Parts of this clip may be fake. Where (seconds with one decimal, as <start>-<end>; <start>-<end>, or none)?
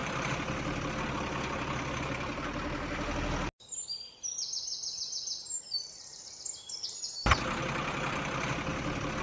0.0-1.0; 4.7-7.6; 8.7-9.2